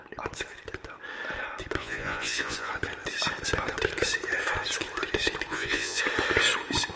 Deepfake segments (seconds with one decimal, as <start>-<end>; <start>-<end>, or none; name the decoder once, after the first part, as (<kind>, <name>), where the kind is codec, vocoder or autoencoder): 1.8-2.7 (vocoder, Vocos); 5.5-6.0